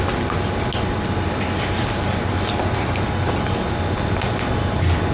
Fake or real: real